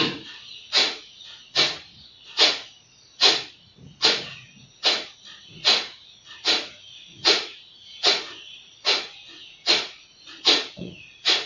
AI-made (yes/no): yes